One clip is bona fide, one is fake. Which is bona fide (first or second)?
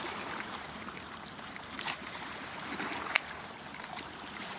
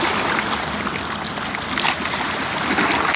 second